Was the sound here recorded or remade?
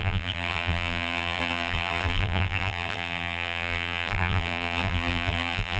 remade